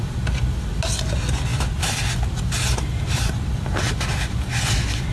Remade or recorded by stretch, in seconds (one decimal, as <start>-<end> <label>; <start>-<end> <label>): 0.0-5.1 recorded

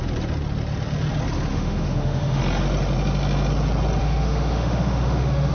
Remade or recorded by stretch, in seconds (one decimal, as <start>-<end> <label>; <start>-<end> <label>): 0.0-1.5 recorded; 1.5-2.4 remade; 2.4-4.0 recorded; 4.0-5.5 remade